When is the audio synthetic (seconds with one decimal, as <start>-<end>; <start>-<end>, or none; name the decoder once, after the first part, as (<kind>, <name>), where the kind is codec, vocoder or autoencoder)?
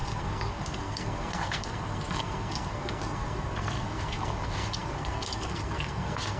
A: 0.0-6.4 (codec, SNAC)